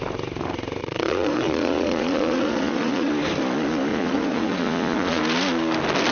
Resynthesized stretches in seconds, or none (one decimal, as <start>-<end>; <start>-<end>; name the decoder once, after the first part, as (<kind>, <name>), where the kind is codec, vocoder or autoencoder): 0.8-3.1 (vocoder, Vocos); 3.9-5.2